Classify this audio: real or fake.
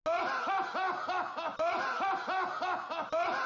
real